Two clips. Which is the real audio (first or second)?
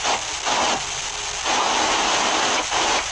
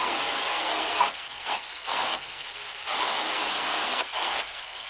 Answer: first